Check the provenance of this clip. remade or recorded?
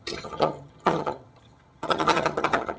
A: remade